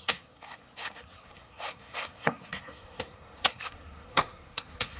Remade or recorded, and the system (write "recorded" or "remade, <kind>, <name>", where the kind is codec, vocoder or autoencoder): remade, codec, SNAC